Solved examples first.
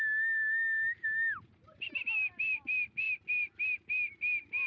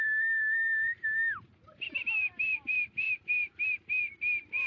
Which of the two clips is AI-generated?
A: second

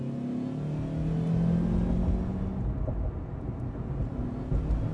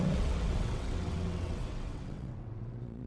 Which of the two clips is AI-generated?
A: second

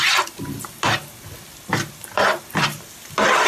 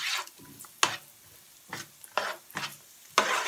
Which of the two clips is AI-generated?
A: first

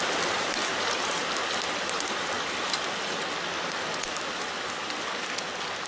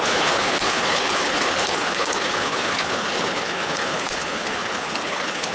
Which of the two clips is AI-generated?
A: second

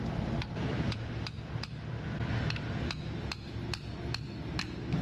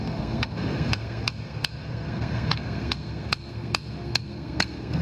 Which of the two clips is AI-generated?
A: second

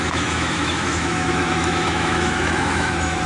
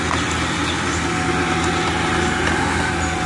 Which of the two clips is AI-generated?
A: first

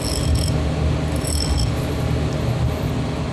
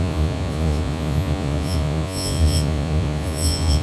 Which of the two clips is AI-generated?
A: second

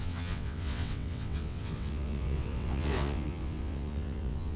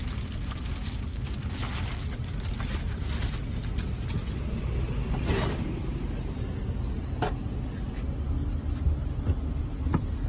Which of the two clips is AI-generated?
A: first